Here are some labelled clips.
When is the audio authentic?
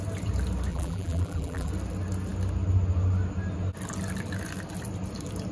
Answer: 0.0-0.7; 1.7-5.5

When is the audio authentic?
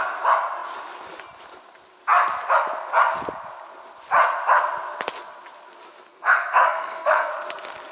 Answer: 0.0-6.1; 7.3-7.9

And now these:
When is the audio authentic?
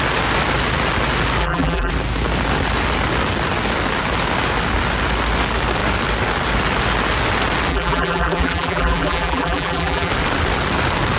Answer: 0.0-1.4; 1.9-7.7; 10.1-11.2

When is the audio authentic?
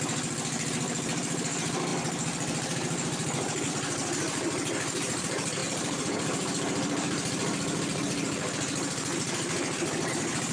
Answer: none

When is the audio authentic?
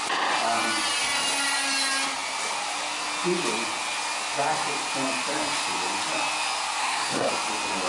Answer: 0.0-6.8; 7.3-7.9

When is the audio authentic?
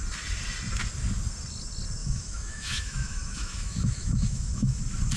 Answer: 0.0-2.0; 4.8-5.2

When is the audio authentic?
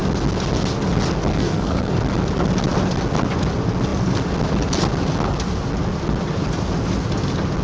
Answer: 0.0-1.3; 1.9-7.6